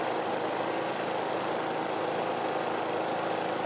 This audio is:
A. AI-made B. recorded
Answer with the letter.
B